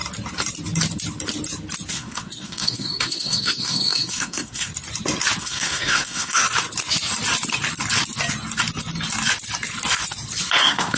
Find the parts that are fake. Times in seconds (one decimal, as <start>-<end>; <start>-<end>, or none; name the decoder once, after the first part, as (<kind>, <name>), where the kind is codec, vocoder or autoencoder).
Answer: 1.9-4.7 (codec, SNAC); 5.4-6.4; 10.6-11.0